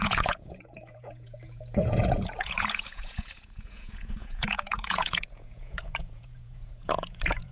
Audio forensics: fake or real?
fake